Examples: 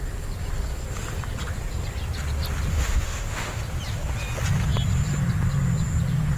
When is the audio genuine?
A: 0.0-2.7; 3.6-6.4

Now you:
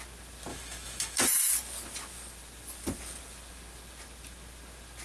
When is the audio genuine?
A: 0.0-0.5; 1.5-5.0

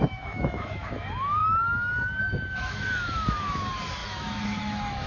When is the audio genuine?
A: 1.4-2.2

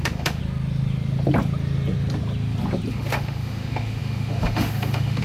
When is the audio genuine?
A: 0.4-2.9

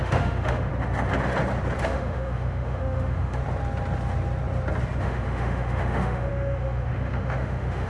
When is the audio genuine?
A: 0.7-1.8; 3.4-5.0

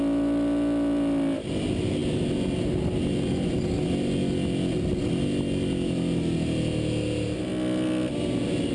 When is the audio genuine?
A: 0.0-8.7

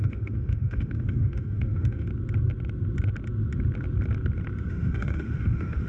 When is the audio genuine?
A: 2.1-4.7